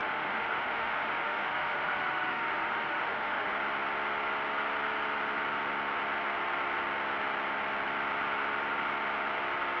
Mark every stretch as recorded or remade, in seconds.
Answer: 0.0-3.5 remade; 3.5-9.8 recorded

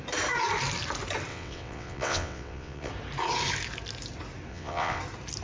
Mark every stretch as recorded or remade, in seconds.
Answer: 0.0-1.3 recorded; 1.3-2.9 remade; 2.9-4.5 recorded; 4.5-5.0 remade; 5.0-5.4 recorded

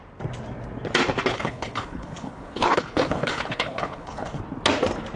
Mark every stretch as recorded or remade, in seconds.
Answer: 0.0-1.3 recorded; 1.3-4.4 remade; 4.4-5.2 recorded